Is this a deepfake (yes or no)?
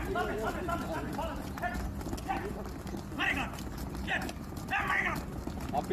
no